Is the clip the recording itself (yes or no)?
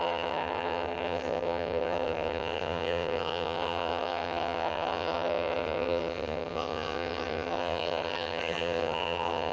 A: no